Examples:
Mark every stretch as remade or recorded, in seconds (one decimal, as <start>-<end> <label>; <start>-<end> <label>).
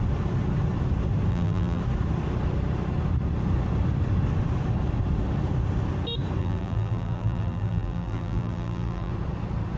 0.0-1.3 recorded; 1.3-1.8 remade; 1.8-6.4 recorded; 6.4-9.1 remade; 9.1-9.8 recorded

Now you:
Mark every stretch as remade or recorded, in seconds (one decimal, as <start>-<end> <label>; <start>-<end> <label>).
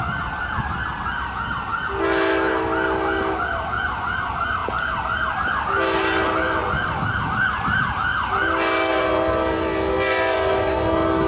0.0-6.6 recorded; 6.6-7.2 remade; 7.2-11.3 recorded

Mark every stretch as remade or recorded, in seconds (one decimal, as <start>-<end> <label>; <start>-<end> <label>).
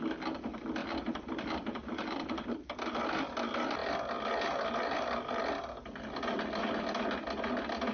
0.0-0.8 recorded; 0.8-2.9 remade; 2.9-7.9 recorded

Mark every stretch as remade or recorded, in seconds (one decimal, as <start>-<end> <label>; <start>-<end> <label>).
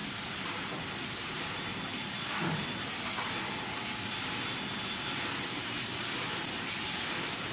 0.0-0.9 remade; 0.9-7.5 recorded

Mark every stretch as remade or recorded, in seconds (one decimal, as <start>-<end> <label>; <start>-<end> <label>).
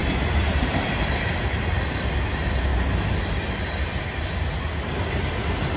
0.0-1.7 remade; 1.7-5.8 recorded